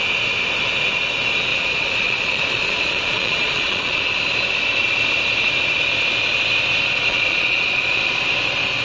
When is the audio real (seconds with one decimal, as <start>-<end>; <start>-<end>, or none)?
0.0-1.5; 4.0-7.1; 8.2-8.8